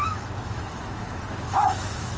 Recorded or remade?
remade